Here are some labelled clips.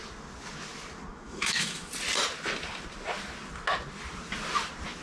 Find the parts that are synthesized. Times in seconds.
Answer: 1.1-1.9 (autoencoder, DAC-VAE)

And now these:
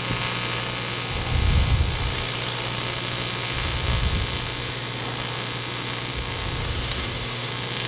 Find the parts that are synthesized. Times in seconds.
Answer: 6.6-7.5 (autoencoder, DAC-VAE)